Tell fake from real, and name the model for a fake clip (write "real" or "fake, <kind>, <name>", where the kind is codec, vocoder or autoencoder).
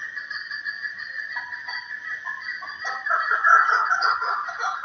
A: real